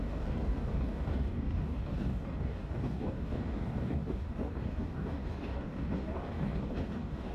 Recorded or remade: remade